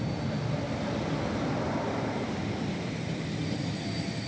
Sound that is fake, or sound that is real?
real